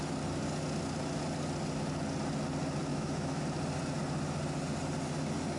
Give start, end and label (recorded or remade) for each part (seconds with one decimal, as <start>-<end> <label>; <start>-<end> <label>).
0.0-2.9 recorded; 2.9-3.4 remade; 3.4-5.6 recorded

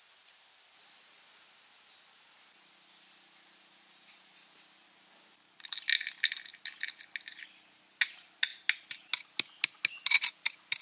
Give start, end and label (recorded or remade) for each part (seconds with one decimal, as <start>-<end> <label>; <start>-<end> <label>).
0.0-10.8 recorded